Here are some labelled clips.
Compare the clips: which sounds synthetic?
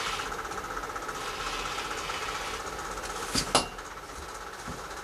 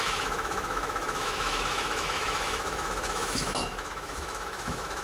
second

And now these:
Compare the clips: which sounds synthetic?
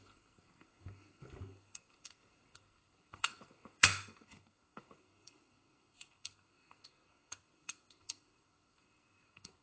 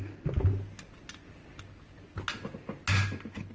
first